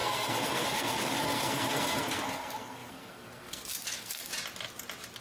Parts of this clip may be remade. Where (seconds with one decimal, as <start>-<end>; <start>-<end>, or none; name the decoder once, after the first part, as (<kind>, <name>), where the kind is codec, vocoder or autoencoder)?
0.0-4.3 (codec, SNAC)